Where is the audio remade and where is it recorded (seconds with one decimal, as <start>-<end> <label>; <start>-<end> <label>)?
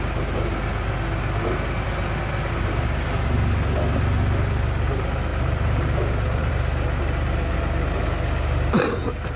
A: 0.0-5.3 recorded; 5.3-6.5 remade; 6.5-9.4 recorded